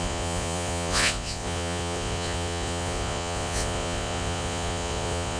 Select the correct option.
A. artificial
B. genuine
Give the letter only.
A